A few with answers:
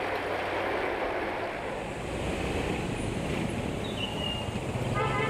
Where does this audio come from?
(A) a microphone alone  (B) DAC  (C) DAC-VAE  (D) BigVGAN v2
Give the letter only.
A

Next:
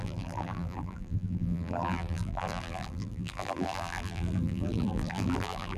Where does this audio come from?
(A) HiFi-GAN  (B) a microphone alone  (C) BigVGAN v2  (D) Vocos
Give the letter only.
C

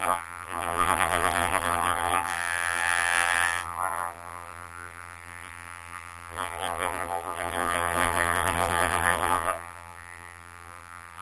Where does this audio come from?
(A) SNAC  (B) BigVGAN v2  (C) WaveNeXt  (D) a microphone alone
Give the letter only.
B